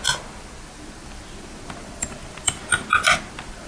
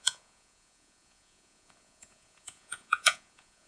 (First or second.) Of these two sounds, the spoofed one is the second